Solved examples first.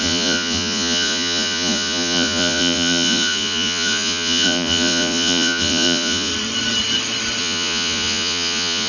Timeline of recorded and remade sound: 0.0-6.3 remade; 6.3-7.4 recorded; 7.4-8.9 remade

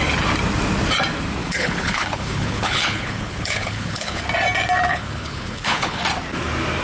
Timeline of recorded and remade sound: 0.0-1.4 recorded; 1.4-4.2 remade; 4.2-4.9 recorded; 4.9-6.0 remade; 6.0-6.8 recorded

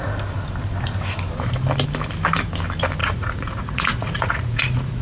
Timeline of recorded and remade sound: 0.0-3.0 recorded; 3.0-5.0 remade

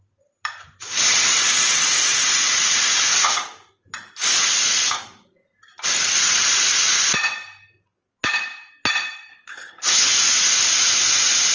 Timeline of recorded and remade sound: 0.0-9.3 recorded; 9.3-10.1 remade; 10.1-11.5 recorded

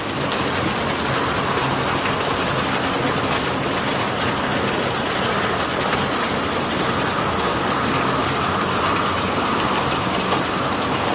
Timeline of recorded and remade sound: 0.0-7.5 recorded; 7.5-8.4 remade; 8.4-11.1 recorded

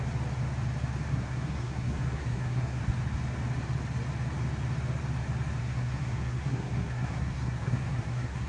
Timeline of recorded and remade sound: 0.0-1.1 recorded; 1.1-2.8 remade; 2.8-5.6 recorded; 5.6-8.5 remade